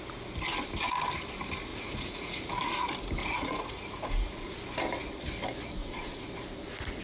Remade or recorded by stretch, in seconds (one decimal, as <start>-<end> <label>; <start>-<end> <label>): 0.0-1.7 recorded; 1.7-2.5 remade; 2.5-3.2 recorded; 3.2-4.5 remade; 4.5-5.8 recorded; 5.8-6.3 remade; 6.3-7.0 recorded